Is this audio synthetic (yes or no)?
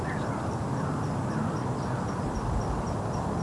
no